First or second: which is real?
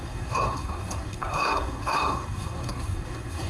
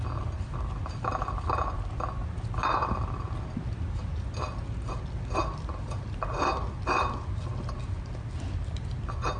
second